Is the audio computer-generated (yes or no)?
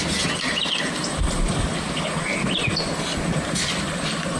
no